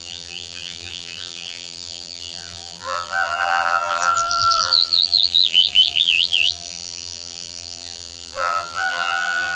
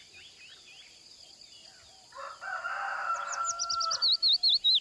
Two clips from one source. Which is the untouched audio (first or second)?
second